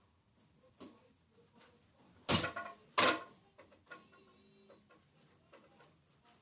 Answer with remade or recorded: recorded